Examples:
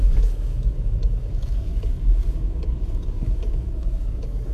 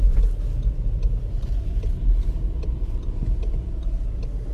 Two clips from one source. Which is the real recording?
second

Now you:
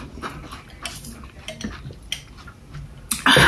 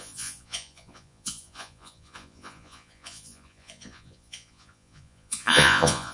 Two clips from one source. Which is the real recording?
first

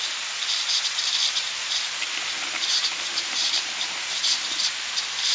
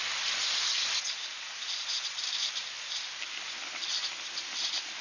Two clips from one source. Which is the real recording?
second